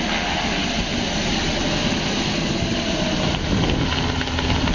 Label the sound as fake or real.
real